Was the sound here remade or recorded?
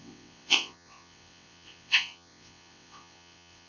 remade